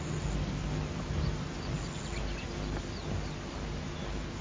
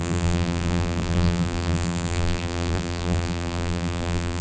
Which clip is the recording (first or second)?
first